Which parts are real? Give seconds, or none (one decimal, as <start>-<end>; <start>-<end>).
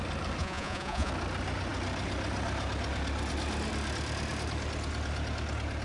0.0-0.4; 1.1-5.8